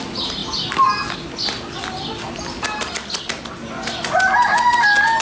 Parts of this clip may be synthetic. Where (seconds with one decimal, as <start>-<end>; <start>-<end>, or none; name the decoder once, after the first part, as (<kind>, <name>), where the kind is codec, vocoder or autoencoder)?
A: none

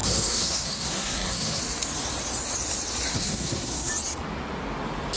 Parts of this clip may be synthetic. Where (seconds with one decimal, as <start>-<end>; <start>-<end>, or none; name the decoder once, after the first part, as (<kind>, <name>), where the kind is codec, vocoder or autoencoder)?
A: 0.0-1.6 (codec, SNAC); 3.1-3.9

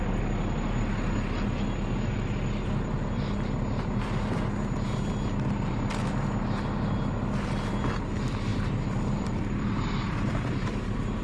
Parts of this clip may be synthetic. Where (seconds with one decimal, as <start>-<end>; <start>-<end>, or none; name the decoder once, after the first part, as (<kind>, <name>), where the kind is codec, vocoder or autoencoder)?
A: 8.5-10.5 (vocoder, BigVGAN v2)

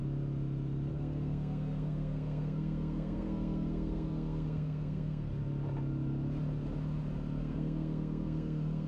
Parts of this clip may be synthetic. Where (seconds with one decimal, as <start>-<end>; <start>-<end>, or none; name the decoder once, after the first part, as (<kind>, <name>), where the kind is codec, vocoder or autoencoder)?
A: 0.9-5.3 (codec, SNAC); 7.4-8.9